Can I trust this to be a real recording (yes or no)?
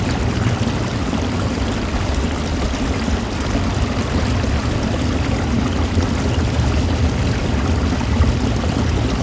yes